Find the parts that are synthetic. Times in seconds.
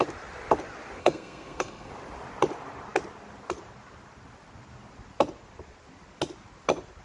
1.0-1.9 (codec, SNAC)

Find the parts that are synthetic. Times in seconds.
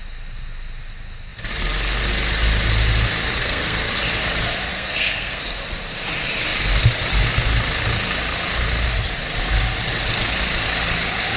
3.4-3.9 (codec, SNAC); 4.7-5.4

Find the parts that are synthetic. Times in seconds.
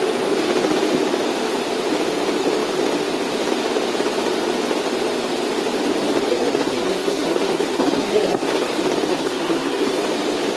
6.3-8.7 (codec, SNAC); 9.1-9.9